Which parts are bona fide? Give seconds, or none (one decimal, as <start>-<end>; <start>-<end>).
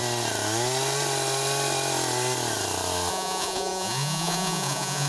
0.0-3.1